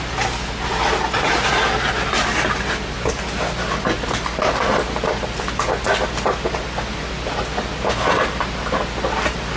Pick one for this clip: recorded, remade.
recorded